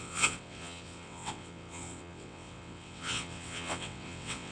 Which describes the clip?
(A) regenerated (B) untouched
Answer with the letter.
A